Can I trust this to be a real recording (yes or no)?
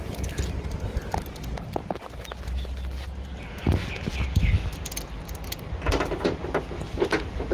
yes